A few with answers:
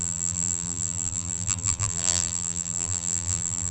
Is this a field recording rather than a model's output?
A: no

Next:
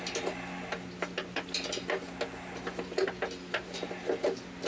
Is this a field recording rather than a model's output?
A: yes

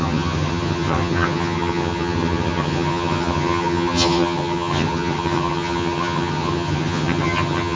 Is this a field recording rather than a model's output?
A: no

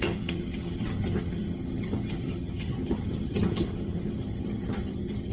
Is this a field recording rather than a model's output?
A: no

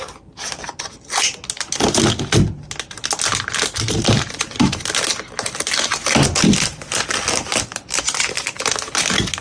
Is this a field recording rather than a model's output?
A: yes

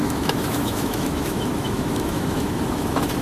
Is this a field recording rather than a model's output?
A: no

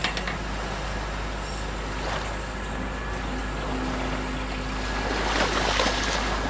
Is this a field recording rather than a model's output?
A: yes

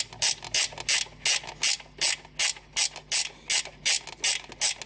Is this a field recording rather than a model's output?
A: yes